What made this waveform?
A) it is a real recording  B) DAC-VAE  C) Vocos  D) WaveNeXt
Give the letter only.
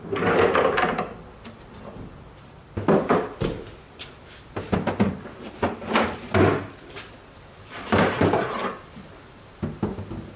A